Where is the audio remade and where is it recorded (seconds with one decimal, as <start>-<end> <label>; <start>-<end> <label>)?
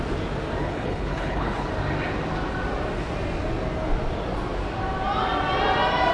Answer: 0.0-0.6 recorded; 0.6-1.7 remade; 1.7-6.1 recorded